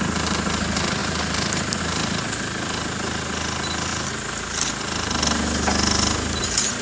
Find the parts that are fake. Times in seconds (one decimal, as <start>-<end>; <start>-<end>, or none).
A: none